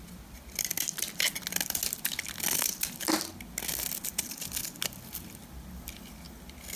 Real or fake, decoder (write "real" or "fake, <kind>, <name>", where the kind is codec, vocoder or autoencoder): real